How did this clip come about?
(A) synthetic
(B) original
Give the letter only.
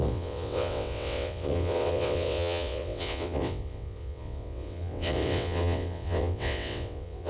A